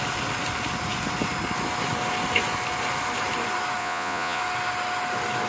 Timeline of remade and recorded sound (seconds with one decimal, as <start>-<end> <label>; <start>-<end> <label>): 0.0-3.8 recorded; 3.8-4.4 remade; 4.4-5.5 recorded